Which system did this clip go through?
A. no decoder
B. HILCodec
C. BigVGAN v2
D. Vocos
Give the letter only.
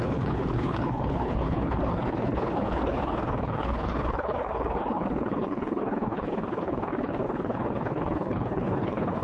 B